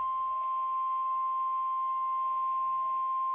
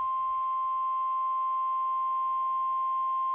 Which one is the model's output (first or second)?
first